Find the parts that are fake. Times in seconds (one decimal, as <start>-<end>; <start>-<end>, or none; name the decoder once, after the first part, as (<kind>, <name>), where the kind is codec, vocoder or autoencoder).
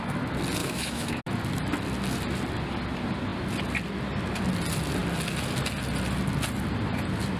0.6-1.2 (autoencoder, DAC-VAE)